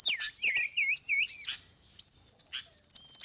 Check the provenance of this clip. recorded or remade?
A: recorded